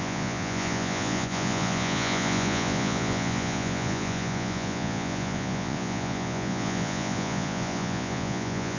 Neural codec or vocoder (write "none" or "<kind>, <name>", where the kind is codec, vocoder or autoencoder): vocoder, Vocos